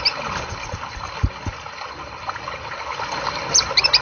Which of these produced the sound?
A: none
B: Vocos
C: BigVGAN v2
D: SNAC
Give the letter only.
A